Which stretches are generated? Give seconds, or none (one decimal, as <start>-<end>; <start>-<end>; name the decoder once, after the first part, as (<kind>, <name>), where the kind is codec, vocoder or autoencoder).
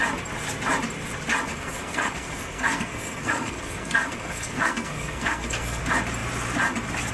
1.5-5.8 (codec, SNAC)